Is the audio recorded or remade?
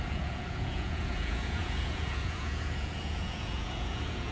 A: remade